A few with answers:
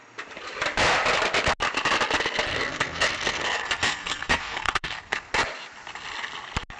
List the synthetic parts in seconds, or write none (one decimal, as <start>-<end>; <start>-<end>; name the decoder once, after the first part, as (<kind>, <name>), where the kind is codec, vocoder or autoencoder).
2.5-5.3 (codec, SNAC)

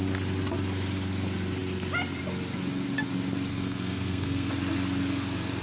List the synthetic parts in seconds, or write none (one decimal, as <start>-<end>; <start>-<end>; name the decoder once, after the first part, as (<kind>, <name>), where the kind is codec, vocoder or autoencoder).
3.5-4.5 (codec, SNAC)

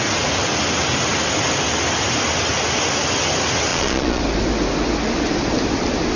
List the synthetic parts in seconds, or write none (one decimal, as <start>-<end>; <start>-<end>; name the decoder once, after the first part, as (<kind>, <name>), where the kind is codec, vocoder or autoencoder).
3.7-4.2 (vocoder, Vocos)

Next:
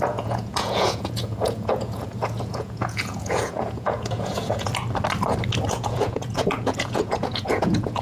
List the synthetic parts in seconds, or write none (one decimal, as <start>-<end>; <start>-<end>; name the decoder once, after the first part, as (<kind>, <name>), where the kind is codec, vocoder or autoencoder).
0.0-4.7 (vocoder, Vocos); 5.7-8.0